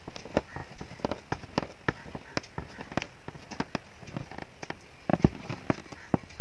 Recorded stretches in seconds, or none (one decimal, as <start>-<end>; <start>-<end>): 0.6-3.1